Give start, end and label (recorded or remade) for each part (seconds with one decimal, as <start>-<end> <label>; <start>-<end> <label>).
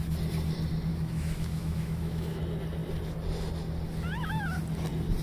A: 0.0-0.9 recorded; 0.9-2.4 remade; 2.4-5.2 recorded